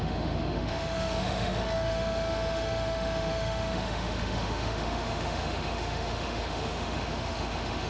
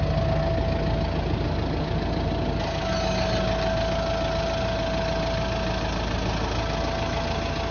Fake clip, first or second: first